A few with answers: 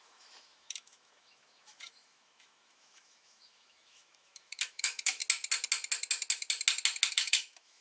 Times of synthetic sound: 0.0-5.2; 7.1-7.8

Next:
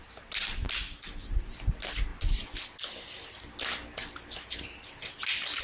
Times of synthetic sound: none

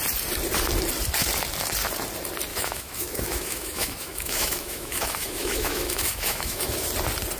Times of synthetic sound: 2.5-6.9

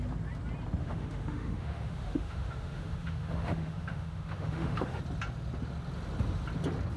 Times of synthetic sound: 0.8-5.0

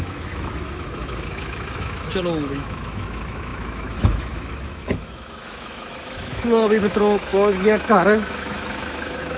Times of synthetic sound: 0.0-9.4

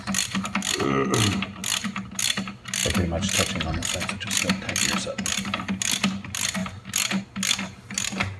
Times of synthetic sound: none